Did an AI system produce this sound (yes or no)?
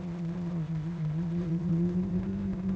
yes